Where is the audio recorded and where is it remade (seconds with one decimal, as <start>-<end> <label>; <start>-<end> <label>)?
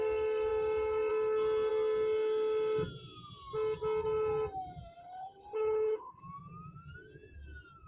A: 0.0-5.0 recorded; 5.0-6.2 remade; 6.2-7.9 recorded